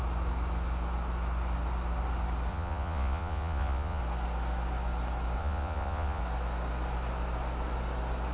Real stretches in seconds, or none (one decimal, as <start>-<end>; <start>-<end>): 0.0-2.5; 4.0-5.4; 6.2-8.3